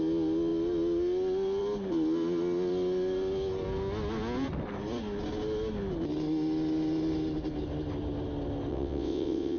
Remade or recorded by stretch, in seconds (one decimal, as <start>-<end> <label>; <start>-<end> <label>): 0.0-8.7 recorded; 8.7-9.6 remade